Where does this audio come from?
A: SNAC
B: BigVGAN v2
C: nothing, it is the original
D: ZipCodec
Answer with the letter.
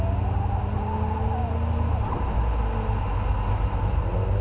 C